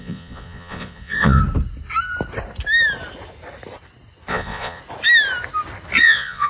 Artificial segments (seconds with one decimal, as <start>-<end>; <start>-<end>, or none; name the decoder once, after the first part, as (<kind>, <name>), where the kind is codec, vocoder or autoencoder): 0.0-1.4 (vocoder, Vocos); 4.3-4.8; 6.0-6.5